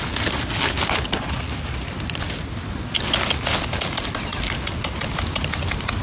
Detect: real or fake real